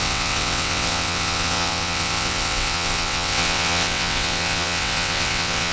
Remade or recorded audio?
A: remade